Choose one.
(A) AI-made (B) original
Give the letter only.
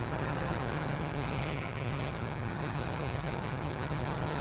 A